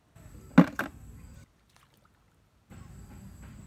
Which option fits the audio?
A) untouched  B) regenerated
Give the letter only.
A